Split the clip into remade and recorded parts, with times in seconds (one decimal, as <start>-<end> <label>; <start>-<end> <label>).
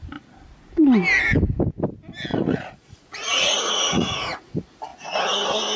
0.0-2.3 recorded; 2.3-4.5 remade; 4.5-5.8 recorded